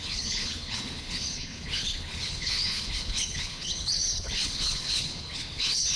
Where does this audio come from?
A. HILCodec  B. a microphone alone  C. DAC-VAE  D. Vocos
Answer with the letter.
A